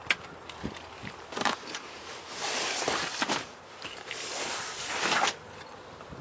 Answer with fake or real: fake